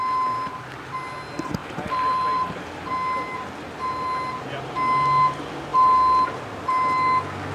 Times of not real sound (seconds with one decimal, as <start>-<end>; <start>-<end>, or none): 1.6-2.9